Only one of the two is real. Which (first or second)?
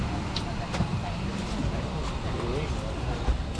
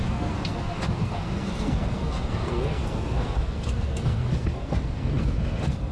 first